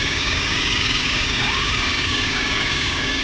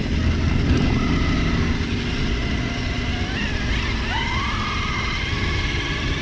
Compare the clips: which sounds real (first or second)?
second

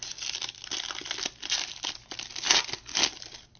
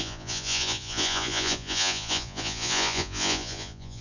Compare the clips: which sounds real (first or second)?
first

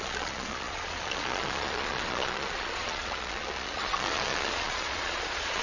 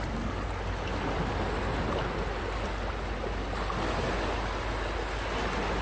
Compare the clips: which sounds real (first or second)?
second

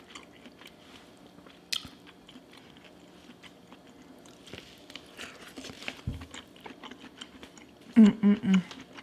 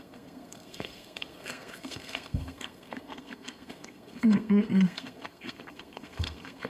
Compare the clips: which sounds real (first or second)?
first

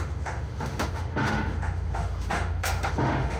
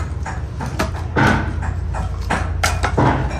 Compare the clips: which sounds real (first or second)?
second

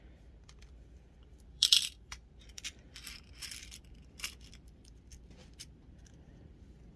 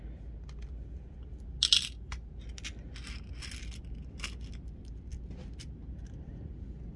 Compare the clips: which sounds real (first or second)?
second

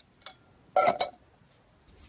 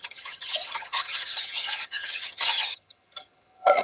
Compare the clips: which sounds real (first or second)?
first